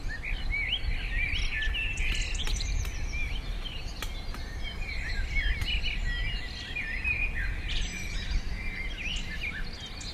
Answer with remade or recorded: recorded